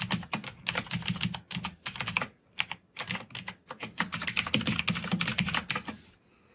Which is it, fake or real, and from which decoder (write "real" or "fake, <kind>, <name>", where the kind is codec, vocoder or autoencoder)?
real